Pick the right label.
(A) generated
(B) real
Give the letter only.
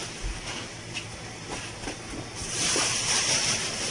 B